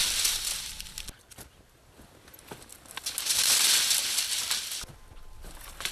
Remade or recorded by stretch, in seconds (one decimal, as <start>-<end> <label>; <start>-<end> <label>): 0.0-5.9 recorded